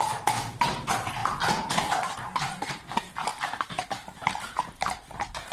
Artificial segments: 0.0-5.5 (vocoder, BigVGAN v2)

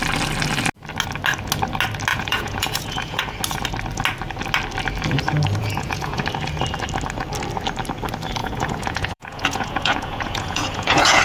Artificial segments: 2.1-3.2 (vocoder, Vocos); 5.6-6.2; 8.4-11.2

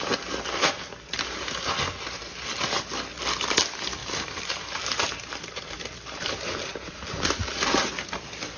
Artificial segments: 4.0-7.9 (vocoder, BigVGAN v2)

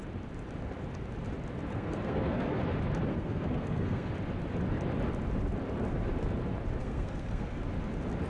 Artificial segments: 1.7-2.6 (codec, SNAC); 3.1-4.1; 6.8-7.6

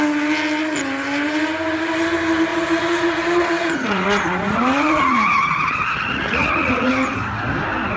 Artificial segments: 2.5-6.9 (vocoder, Vocos)

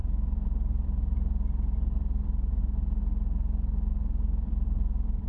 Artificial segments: 0.0-3.0 (vocoder, BigVGAN v2); 3.9-5.3

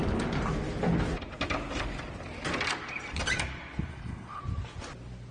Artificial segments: 3.9-4.4 (codec, HILCodec)